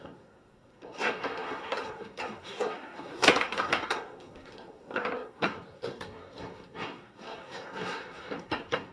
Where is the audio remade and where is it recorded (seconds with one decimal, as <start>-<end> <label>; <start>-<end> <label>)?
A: 0.0-8.9 remade